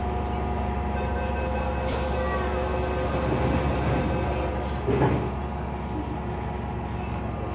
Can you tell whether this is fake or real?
real